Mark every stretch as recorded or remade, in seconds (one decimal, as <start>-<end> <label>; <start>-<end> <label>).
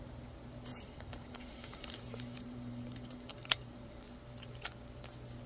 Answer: 0.0-0.7 recorded; 0.7-4.0 remade; 4.0-5.5 recorded